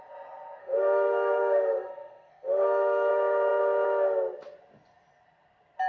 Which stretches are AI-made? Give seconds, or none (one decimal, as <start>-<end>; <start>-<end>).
0.6-3.1